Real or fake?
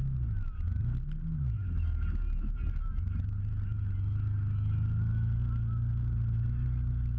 real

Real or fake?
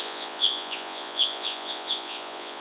fake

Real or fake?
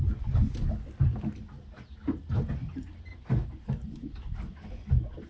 real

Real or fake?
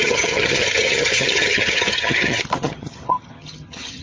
fake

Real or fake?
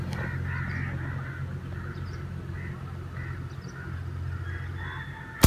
real